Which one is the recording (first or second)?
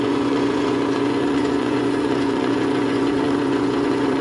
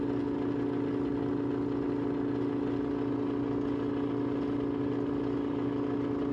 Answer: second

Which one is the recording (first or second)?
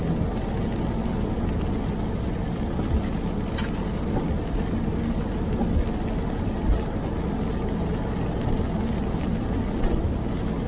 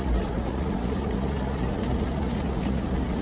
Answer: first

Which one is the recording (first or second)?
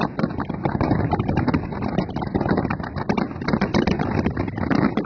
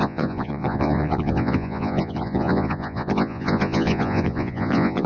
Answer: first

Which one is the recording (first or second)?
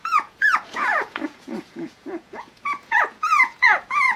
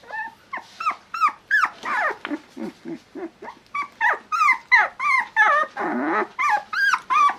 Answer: second